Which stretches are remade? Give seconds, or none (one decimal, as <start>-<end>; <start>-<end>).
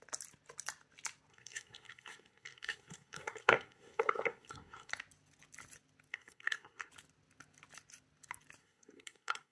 1.3-4.9; 6.1-6.9; 8.6-9.5